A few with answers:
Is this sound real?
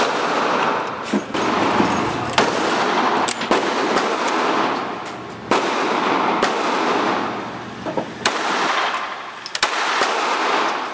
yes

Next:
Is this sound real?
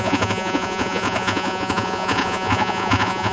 no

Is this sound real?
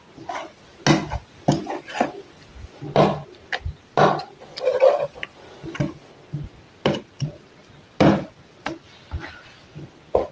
yes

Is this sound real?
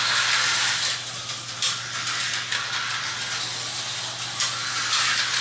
yes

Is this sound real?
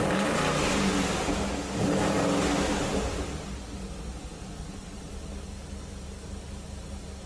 yes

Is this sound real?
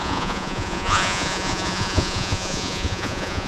no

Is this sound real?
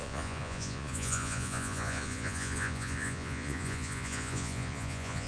no